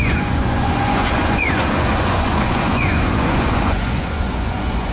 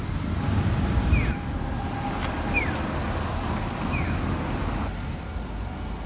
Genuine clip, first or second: second